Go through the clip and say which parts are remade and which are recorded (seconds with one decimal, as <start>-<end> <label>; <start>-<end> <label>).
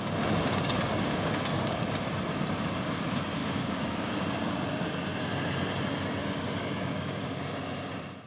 0.0-0.4 recorded; 0.4-1.8 remade; 1.8-3.4 recorded; 3.4-4.2 remade; 4.2-6.2 recorded; 6.2-7.4 remade; 7.4-8.3 recorded